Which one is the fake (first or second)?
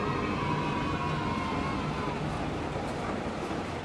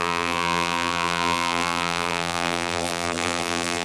second